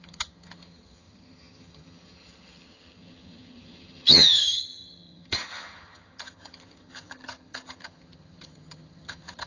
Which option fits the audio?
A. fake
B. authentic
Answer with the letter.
A